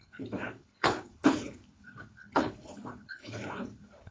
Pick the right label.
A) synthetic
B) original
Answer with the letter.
A